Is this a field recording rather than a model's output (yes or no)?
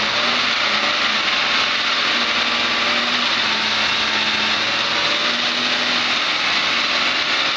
yes